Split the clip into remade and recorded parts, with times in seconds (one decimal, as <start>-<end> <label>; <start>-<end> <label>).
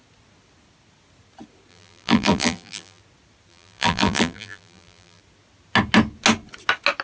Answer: 0.0-1.7 recorded; 1.7-3.0 remade; 3.0-3.5 recorded; 3.5-5.2 remade; 5.2-7.0 recorded